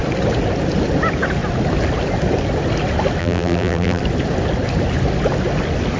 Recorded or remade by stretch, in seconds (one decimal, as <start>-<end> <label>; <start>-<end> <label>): 0.0-3.2 recorded; 3.2-4.0 remade; 4.0-6.0 recorded